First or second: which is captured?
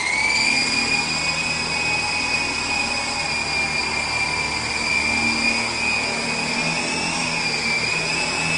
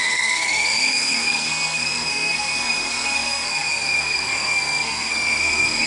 first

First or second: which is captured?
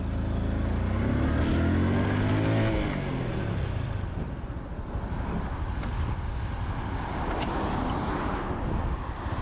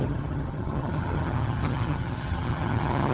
first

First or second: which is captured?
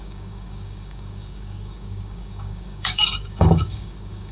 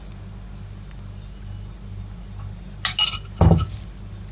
second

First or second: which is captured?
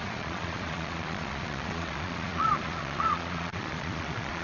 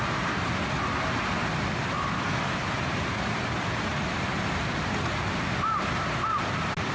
second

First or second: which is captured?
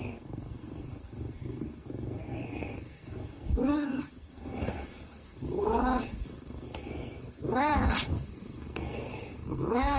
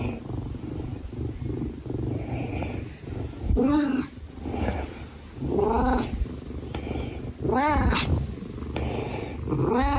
second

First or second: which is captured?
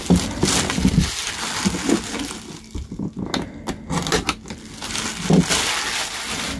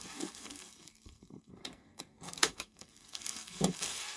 first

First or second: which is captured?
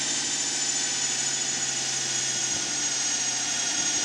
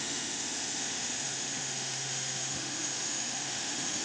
first